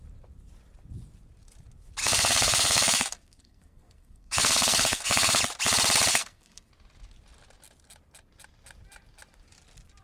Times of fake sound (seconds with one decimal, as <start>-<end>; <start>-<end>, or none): 2.0-5.4; 6.1-6.7